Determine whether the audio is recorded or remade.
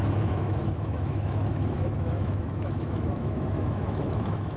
remade